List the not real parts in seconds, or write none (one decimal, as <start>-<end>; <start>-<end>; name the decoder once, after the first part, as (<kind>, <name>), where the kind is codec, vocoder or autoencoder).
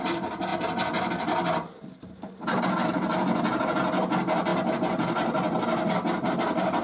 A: none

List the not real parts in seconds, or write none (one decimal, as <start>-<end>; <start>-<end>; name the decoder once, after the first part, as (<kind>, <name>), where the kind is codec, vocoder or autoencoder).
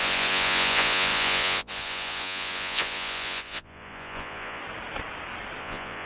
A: 0.0-4.6 (vocoder, Vocos); 5.6-6.1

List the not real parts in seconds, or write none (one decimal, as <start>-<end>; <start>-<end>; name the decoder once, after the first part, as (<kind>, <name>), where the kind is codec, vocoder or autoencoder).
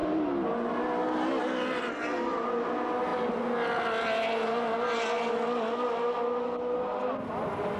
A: none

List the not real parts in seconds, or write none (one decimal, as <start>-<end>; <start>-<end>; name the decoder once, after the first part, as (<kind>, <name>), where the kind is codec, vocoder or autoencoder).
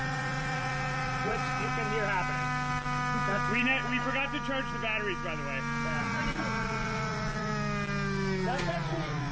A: 0.0-1.7 (vocoder, Vocos); 6.0-7.5; 8.7-9.3